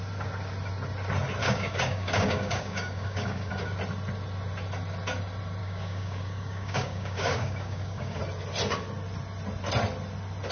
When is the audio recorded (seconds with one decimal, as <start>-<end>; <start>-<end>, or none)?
0.0-1.4; 3.5-5.6; 8.2-10.5